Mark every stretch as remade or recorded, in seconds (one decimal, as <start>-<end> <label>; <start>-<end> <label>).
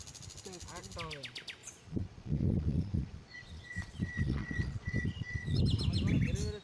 0.0-1.6 recorded; 1.6-5.6 remade; 5.6-6.6 recorded